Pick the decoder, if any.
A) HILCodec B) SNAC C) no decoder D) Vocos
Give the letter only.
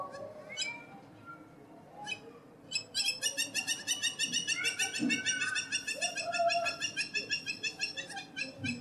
C